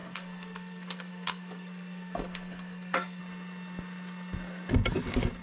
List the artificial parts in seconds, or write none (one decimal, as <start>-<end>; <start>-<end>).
0.0-3.2